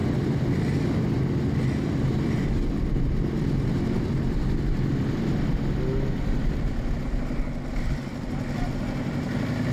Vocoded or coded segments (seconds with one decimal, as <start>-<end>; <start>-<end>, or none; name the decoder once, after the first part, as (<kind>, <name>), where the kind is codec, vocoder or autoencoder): none